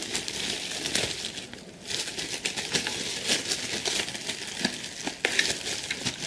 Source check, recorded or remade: recorded